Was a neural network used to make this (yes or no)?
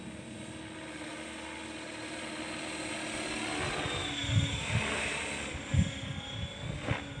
no